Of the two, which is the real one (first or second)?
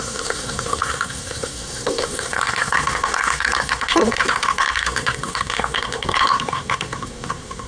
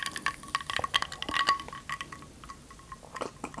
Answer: second